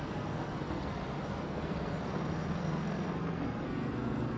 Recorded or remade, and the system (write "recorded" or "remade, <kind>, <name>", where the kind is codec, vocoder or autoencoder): remade, codec, SNAC